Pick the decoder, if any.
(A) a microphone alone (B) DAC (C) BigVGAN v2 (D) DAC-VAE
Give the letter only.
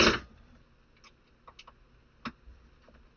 A